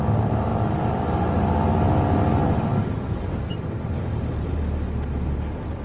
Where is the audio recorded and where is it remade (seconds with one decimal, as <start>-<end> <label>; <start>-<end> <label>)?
0.0-2.7 recorded; 2.7-4.5 remade; 4.5-5.8 recorded